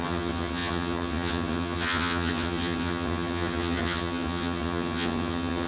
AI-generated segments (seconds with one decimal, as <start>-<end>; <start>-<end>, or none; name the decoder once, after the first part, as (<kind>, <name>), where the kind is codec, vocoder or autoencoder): 0.0-5.7 (vocoder, HiFi-GAN)